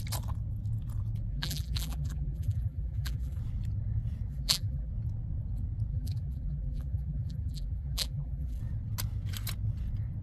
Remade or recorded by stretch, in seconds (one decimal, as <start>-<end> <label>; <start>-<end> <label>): 0.0-1.3 recorded; 1.3-3.4 remade; 3.4-4.3 recorded; 4.3-4.9 remade; 4.9-5.9 recorded; 5.9-8.6 remade; 8.6-10.2 recorded